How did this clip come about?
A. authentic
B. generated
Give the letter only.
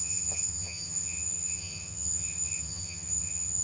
B